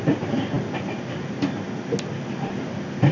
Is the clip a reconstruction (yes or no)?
no